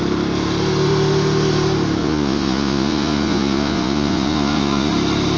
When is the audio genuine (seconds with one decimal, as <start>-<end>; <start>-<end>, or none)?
0.0-2.0; 4.9-5.4